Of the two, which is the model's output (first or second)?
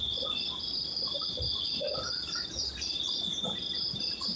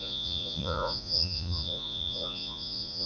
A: second